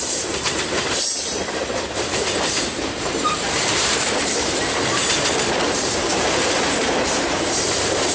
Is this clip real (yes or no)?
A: no